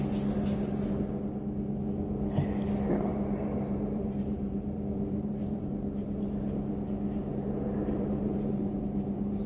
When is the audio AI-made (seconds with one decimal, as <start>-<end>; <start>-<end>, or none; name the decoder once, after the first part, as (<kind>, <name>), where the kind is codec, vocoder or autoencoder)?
3.1-5.7 (vocoder, BigVGAN v2); 7.3-9.5